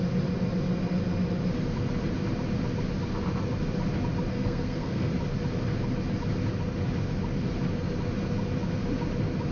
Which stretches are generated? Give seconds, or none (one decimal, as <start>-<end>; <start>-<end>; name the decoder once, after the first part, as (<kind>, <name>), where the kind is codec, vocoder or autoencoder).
4.3-5.1 (codec, SNAC)